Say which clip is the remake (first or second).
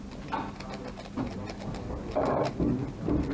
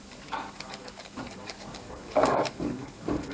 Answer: second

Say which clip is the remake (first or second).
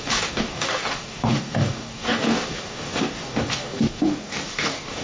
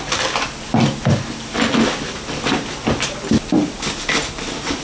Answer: first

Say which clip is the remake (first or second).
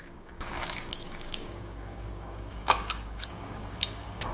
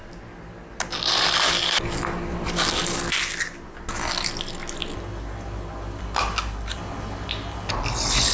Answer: first